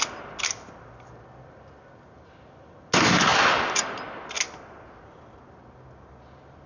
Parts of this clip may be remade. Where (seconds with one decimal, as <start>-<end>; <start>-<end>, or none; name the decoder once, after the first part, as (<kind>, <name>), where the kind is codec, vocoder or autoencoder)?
none